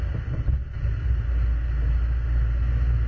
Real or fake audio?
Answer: real